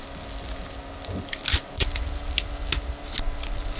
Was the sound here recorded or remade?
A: recorded